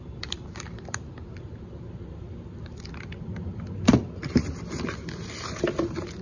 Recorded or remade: recorded